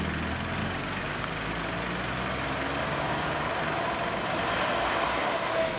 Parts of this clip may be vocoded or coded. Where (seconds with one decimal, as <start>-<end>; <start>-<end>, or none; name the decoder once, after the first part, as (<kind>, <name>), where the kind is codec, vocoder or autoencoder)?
0.6-1.5 (codec, DAC); 2.8-3.5